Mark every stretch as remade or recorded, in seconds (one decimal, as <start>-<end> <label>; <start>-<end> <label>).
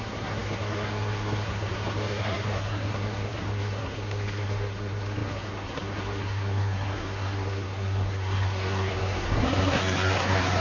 0.0-10.6 remade